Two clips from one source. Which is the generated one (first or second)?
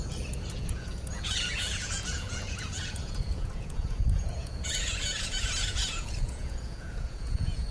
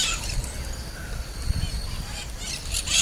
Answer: first